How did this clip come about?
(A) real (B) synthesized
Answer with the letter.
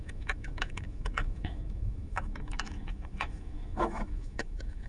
B